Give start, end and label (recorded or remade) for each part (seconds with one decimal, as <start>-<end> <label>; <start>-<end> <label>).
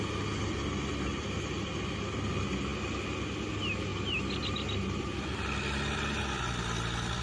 0.0-7.2 recorded